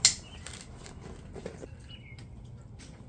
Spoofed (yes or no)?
no